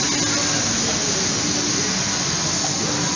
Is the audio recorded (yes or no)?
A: yes